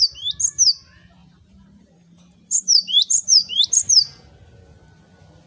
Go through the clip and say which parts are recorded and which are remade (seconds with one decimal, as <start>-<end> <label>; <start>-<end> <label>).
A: 0.0-1.2 recorded; 1.2-4.3 remade; 4.3-5.5 recorded